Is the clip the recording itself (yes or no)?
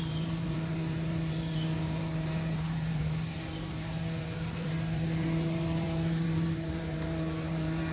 no